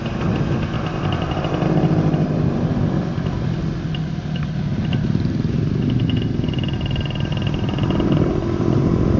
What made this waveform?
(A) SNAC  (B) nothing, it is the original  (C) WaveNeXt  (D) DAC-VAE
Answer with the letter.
B